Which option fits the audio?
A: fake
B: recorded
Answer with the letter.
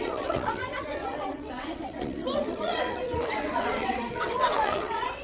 A